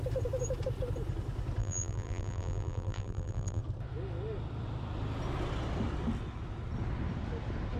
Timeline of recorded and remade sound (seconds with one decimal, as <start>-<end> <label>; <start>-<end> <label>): 0.0-1.6 recorded; 1.6-3.6 remade; 3.6-7.8 recorded